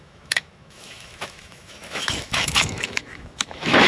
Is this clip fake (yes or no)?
yes